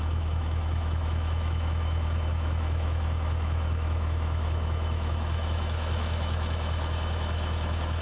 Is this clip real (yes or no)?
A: no